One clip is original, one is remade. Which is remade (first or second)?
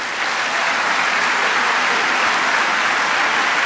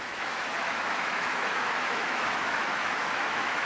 second